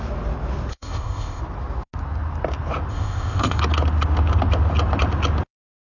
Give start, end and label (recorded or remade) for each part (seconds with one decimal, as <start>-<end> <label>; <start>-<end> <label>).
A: 0.0-0.7 recorded; 0.7-1.4 remade; 1.4-2.9 recorded; 2.9-3.6 remade; 3.6-5.9 recorded